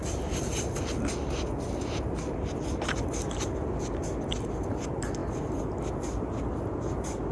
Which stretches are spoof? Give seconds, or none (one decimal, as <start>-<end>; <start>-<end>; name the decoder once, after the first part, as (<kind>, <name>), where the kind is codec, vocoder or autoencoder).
none